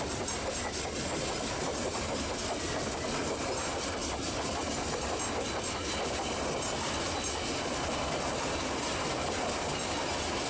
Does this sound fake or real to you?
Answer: real